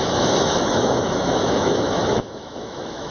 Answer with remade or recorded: remade